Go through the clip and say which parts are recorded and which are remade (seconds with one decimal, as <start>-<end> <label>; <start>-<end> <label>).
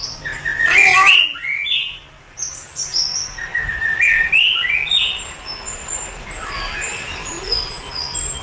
0.0-3.5 recorded; 3.5-6.4 remade; 6.4-8.4 recorded